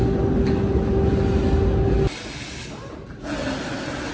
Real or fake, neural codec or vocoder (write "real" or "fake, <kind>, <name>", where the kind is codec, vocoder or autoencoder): real